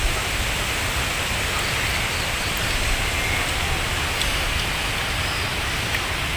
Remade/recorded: recorded